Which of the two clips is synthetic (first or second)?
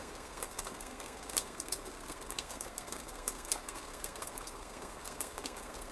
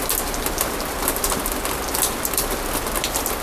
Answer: first